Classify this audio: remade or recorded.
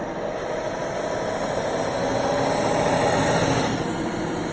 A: recorded